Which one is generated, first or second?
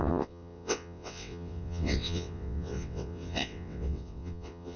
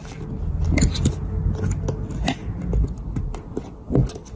first